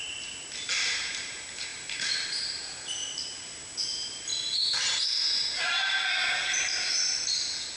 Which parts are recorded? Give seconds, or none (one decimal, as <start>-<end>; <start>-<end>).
0.0-7.8